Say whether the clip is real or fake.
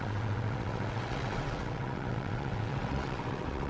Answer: fake